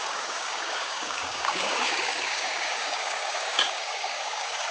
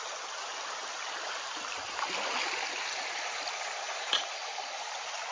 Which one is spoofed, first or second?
first